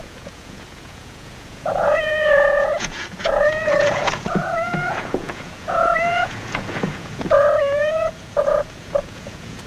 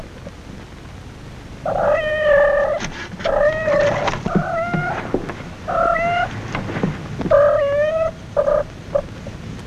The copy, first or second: first